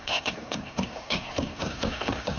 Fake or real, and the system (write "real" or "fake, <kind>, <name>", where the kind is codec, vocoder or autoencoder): fake, codec, SNAC